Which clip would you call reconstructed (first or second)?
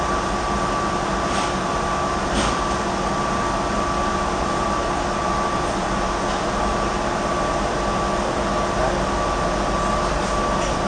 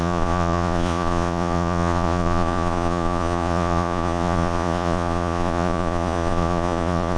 second